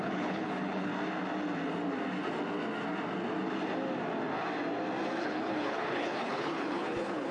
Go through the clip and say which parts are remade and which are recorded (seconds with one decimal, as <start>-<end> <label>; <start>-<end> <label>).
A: 0.0-0.9 remade; 0.9-5.2 recorded; 5.2-7.3 remade